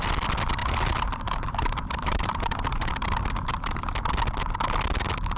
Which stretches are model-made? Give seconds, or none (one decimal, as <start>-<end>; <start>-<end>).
0.6-2.9; 3.5-4.1